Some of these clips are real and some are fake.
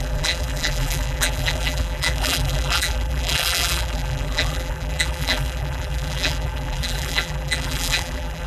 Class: fake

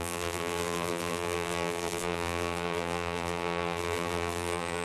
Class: fake